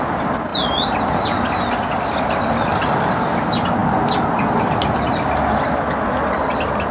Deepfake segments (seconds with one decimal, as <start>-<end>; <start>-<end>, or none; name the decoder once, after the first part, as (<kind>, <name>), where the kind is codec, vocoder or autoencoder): none